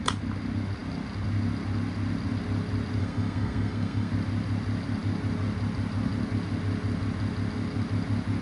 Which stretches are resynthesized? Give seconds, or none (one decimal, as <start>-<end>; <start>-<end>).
3.0-4.1